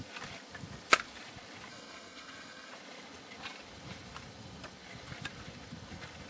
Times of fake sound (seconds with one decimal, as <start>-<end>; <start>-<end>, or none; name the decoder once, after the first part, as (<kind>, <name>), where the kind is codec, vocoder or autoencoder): 1.7-2.7 (codec, SNAC)